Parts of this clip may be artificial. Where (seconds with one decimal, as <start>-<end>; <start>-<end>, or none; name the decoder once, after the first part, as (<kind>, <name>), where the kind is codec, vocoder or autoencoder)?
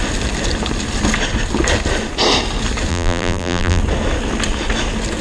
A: 2.9-3.8 (vocoder, BigVGAN v2)